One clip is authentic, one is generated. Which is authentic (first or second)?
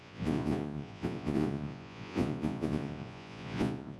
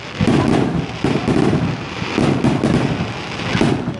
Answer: second